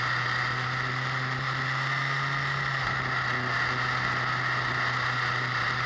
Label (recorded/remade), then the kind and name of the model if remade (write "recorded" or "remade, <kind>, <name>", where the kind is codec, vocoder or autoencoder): recorded